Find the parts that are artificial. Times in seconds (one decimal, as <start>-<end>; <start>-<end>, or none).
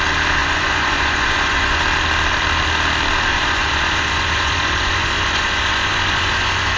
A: 0.4-1.8; 3.3-6.8